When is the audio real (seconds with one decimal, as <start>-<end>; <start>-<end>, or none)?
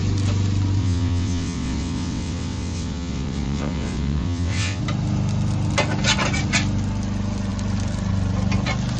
0.0-0.8; 4.8-9.0